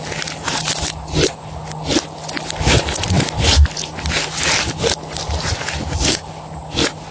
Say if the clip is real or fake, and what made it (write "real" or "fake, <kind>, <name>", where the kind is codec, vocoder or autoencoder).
real